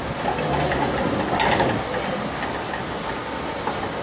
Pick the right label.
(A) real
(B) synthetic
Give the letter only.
A